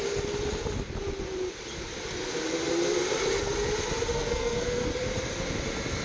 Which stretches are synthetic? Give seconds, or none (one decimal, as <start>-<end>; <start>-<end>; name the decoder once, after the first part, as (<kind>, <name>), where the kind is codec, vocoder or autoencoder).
4.1-4.9 (codec, SNAC)